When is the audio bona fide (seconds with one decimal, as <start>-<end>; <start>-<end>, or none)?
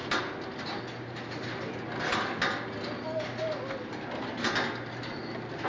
0.0-5.7